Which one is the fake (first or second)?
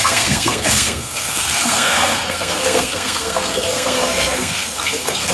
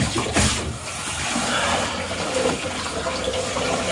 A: first